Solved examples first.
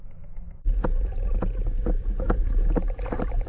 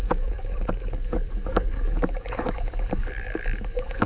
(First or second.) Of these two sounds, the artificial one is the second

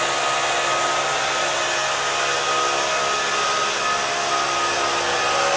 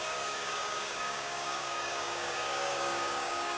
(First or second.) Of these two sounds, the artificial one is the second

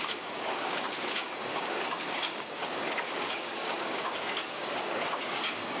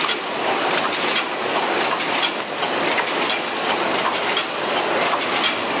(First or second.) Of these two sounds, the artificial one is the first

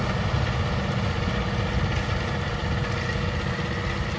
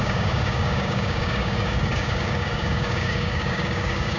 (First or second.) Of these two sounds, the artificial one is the second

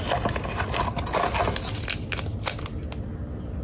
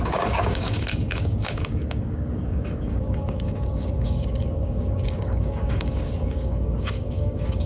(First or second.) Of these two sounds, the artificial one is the second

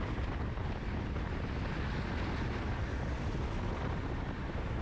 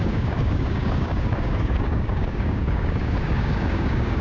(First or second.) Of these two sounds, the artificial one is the second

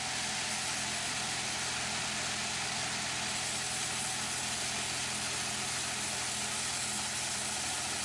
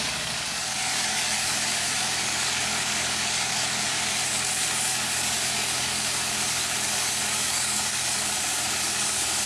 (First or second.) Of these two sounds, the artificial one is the second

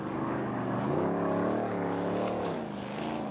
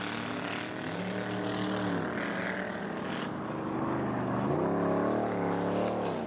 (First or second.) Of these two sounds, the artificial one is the first